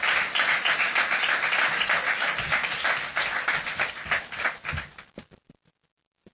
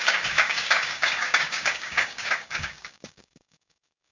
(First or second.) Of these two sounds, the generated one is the second